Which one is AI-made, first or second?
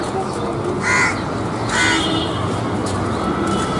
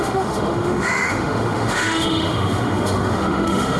second